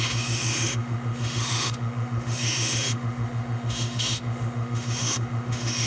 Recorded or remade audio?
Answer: remade